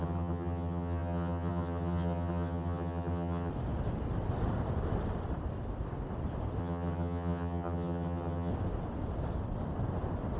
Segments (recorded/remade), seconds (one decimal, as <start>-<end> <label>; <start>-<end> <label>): 0.0-3.5 remade; 3.5-6.6 recorded; 6.6-8.5 remade; 8.5-10.4 recorded